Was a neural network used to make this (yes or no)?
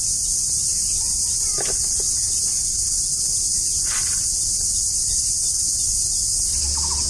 no